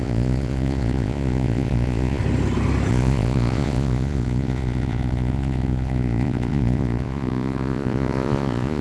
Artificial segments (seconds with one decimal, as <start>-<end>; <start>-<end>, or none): 0.0-2.2; 2.9-8.8